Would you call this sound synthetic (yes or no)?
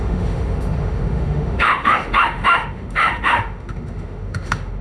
yes